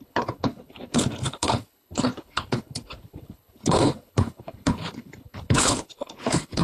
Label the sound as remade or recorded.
remade